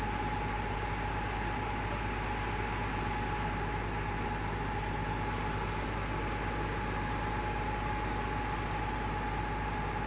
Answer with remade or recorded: recorded